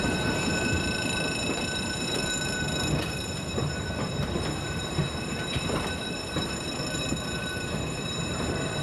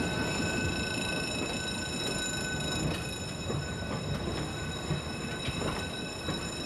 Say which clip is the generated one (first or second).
first